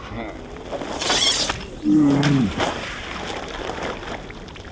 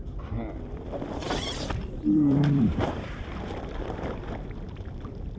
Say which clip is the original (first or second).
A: first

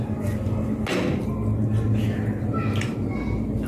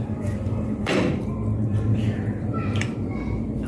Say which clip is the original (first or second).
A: first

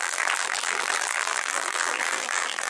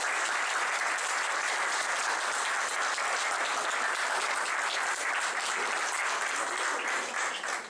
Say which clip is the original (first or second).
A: second